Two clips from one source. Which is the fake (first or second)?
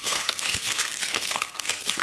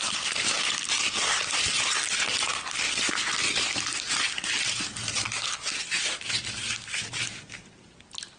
first